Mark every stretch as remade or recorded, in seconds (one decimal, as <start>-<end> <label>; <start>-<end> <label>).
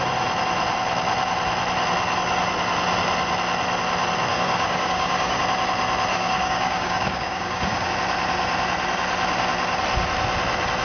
0.0-4.3 recorded; 4.3-5.4 remade; 5.4-6.1 recorded; 6.1-7.9 remade; 7.9-10.8 recorded